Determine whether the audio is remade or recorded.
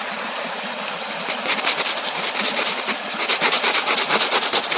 recorded